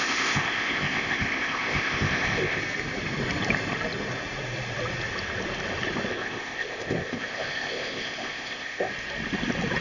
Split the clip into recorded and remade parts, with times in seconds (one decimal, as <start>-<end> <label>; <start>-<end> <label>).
0.0-2.6 remade; 2.6-6.1 recorded; 6.1-8.9 remade; 8.9-9.8 recorded

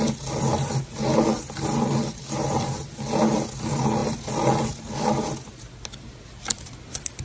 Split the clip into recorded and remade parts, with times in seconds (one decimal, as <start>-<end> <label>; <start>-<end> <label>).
0.0-7.2 recorded

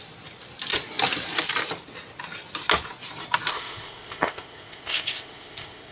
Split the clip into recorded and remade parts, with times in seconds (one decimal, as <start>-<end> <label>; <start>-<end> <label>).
0.0-3.5 recorded; 3.5-5.9 remade

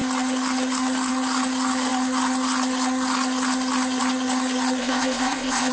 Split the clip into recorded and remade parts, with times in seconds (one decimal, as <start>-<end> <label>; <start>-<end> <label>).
0.0-4.8 recorded; 4.8-5.7 remade

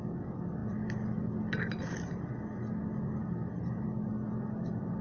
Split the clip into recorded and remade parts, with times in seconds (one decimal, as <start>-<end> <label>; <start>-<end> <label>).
0.0-5.0 recorded

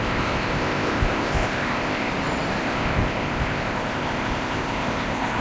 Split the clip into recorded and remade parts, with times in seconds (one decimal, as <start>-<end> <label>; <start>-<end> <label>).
0.0-2.1 remade; 2.1-2.6 recorded; 2.6-5.4 remade

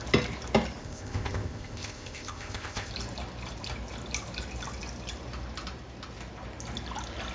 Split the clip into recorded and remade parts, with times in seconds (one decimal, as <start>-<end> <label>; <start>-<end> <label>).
0.0-0.8 recorded; 0.8-2.9 remade; 2.9-7.3 recorded